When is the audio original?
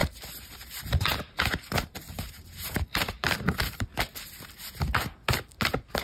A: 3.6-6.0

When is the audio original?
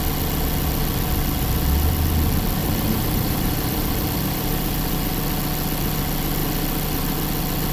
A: 0.0-2.6; 5.1-7.7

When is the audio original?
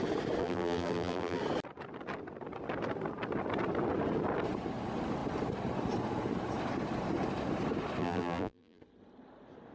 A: 0.0-0.4; 1.4-8.0; 8.8-9.7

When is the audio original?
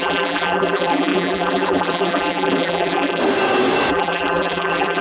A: 3.2-3.9